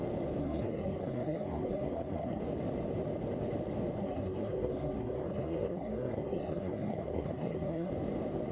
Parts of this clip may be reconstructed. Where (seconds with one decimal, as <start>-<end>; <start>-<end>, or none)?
0.4-2.4; 4.0-7.9